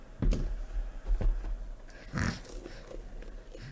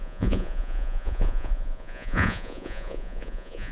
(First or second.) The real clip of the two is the first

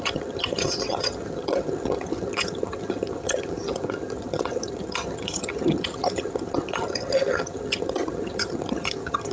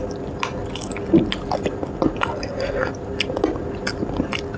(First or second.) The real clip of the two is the second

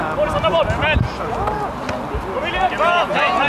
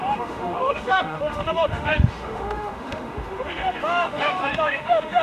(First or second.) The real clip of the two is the first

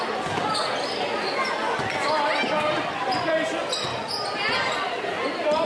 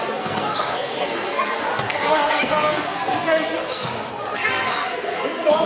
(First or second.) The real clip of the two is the first